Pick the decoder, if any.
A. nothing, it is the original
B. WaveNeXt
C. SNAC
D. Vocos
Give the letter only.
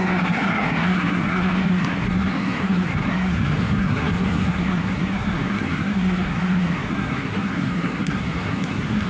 C